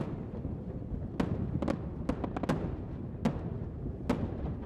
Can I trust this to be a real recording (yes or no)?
yes